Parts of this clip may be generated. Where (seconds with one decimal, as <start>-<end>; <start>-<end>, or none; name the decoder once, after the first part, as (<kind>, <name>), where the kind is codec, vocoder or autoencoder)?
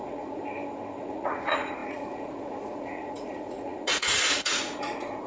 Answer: 0.0-0.4 (vocoder, Vocos); 1.0-5.3